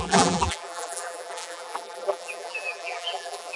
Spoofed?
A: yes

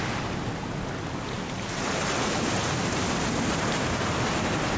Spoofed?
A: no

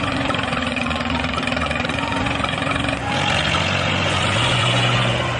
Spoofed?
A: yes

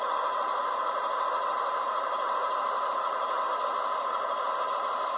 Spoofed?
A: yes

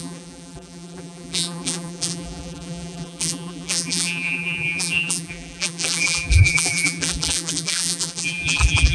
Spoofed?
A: yes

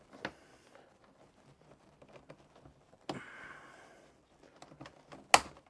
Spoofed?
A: no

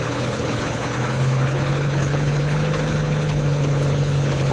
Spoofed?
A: yes